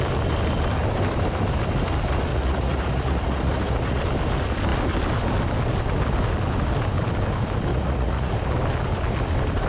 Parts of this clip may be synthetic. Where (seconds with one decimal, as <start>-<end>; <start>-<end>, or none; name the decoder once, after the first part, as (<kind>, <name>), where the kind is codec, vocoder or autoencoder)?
2.3-4.0 (vocoder, Vocos); 7.7-8.3